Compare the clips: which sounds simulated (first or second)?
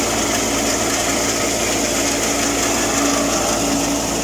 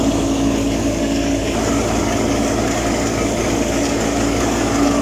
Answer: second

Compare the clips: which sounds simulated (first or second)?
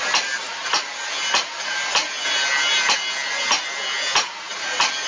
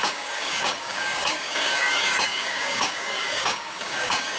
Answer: second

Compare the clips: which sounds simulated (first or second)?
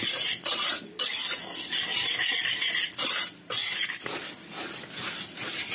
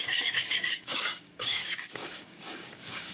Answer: second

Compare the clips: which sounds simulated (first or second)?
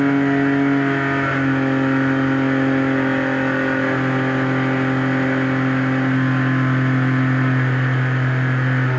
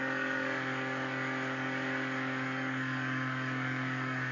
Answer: second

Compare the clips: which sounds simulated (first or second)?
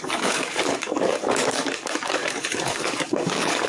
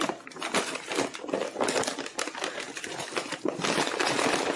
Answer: first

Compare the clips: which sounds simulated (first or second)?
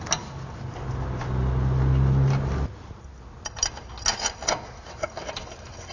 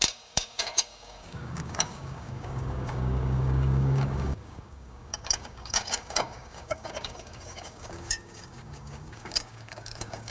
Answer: second